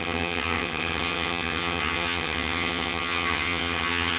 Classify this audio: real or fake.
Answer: fake